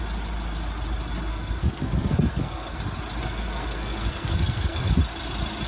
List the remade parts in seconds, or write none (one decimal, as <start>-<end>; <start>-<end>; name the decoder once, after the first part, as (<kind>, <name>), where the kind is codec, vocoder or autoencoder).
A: 1.3-2.8 (codec, SNAC); 3.2-4.9

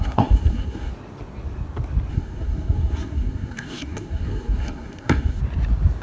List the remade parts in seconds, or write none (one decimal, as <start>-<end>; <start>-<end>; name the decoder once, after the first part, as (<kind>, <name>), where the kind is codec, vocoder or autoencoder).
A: 0.0-0.9 (codec, SNAC); 2.1-5.4

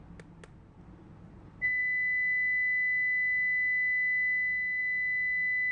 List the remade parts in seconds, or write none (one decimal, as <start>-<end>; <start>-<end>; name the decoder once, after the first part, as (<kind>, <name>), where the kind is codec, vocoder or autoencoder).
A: none